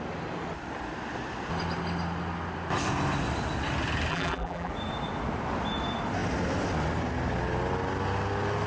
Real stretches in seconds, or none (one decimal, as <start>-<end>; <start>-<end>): 0.0-4.1; 4.7-8.7